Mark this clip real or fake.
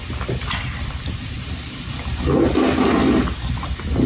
fake